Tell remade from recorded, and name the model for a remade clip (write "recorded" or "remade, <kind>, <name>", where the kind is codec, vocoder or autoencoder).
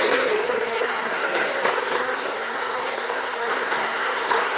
remade, codec, SNAC